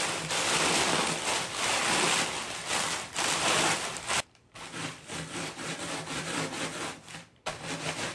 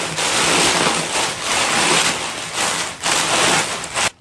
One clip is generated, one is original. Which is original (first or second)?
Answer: second